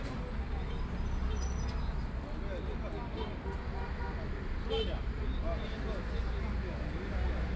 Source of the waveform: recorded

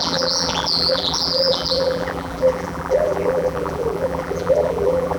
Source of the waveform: remade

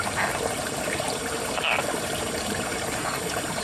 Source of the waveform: remade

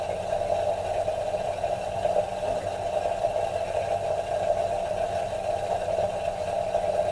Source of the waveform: recorded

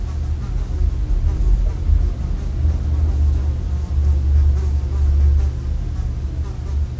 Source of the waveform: recorded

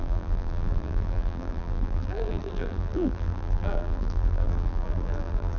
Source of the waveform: remade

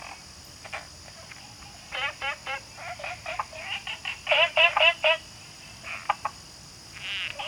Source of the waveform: recorded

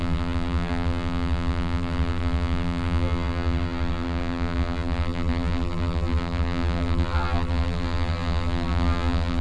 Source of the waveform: remade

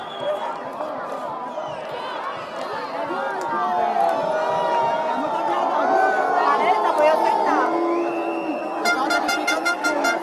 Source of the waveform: recorded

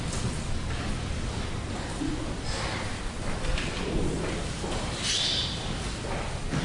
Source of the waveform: remade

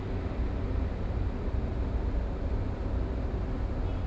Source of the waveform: recorded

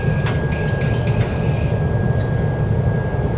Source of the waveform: recorded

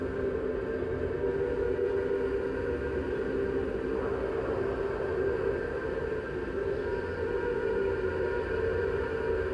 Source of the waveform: recorded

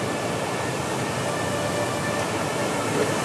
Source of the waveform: recorded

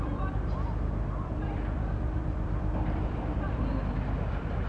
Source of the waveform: remade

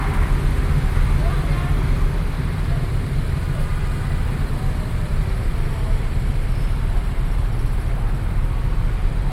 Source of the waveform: recorded